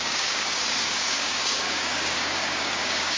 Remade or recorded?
remade